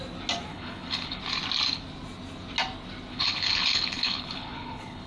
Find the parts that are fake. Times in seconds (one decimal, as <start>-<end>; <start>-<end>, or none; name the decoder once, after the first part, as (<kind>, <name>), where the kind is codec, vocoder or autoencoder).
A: 0.5-1.2 (codec, HILCodec); 3.1-5.1